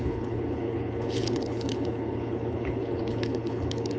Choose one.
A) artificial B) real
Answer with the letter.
A